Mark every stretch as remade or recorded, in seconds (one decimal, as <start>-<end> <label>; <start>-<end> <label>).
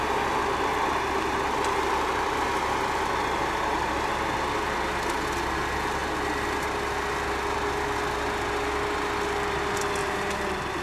0.0-10.0 recorded; 10.0-10.8 remade